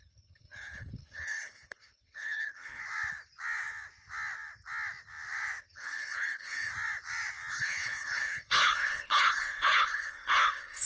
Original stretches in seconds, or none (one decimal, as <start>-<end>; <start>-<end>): 2.8-5.6; 6.7-7.5